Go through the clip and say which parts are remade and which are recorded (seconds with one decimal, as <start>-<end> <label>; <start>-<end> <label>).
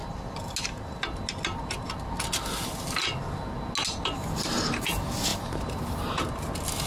0.0-6.9 recorded